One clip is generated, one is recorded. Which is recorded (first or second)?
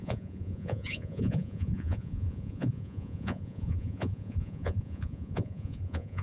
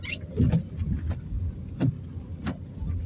second